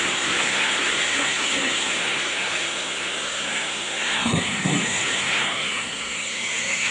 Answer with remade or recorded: remade